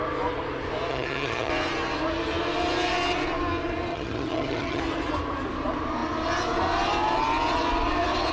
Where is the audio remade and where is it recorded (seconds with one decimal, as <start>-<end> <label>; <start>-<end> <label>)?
0.0-0.9 recorded; 0.9-1.5 remade; 1.5-3.9 recorded; 3.9-4.8 remade; 4.8-8.3 recorded